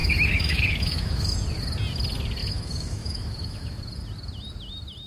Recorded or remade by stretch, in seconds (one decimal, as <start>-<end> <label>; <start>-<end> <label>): 0.0-1.3 remade; 1.3-2.4 recorded; 2.4-3.8 remade; 3.8-5.1 recorded

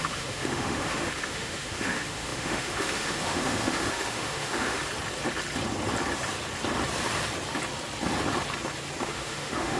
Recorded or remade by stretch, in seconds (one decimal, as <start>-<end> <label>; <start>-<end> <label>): 0.0-4.8 remade; 4.8-9.0 recorded; 9.0-9.8 remade

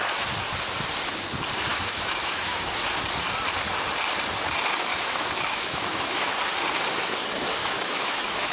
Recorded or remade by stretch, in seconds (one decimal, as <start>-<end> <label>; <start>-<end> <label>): 0.0-1.7 recorded; 1.7-2.7 remade; 2.7-4.9 recorded; 4.9-6.3 remade; 6.3-7.6 recorded; 7.6-8.5 remade

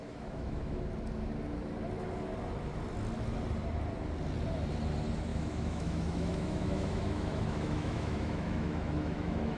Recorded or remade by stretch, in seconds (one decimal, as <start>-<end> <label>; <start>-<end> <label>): 0.0-0.8 remade; 0.8-5.3 recorded; 5.3-9.6 remade

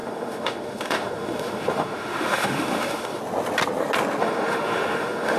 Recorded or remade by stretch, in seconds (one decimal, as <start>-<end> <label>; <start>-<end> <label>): 0.0-3.2 remade; 3.2-4.2 recorded; 4.2-5.4 remade